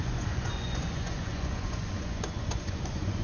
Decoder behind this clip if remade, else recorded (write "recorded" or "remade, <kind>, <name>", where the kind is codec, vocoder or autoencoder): remade, vocoder, Vocos